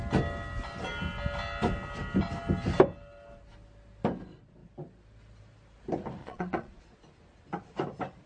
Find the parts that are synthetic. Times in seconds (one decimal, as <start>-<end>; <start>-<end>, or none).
6.2-6.8